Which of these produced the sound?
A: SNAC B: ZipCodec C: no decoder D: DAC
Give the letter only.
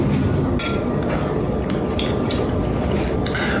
C